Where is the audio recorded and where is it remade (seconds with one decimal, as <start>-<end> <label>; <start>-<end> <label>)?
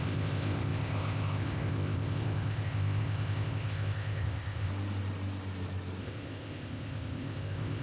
0.0-4.7 remade; 4.7-6.0 recorded; 6.0-7.8 remade